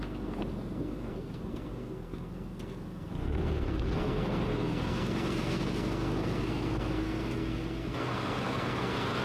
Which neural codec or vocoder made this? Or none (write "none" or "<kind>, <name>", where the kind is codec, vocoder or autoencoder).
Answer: codec, SNAC